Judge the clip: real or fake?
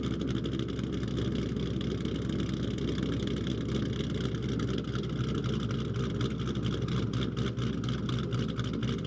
real